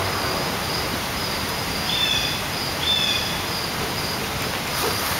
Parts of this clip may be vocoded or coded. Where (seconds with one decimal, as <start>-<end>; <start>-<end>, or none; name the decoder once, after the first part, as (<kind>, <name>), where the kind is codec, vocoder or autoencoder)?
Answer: 0.9-2.4 (vocoder, BigVGAN v2)